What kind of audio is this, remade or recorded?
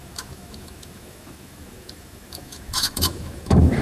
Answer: remade